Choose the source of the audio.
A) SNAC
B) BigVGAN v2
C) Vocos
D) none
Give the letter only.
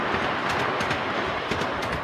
D